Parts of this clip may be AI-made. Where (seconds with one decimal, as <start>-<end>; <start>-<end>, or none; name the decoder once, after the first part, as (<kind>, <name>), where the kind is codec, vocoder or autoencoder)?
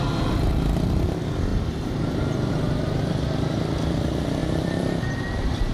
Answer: 4.4-5.0 (vocoder, BigVGAN v2)